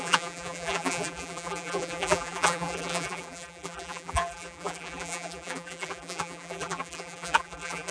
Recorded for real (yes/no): no